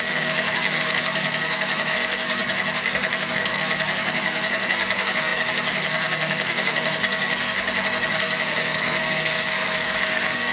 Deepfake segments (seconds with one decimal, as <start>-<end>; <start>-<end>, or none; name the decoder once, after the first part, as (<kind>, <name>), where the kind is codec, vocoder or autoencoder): 0.0-10.5 (codec, SNAC)